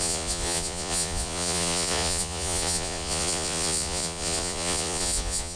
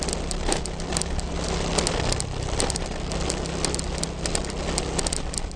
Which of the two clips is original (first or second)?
second